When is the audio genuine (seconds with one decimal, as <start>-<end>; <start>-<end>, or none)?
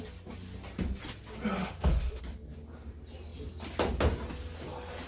0.0-1.6; 2.2-5.1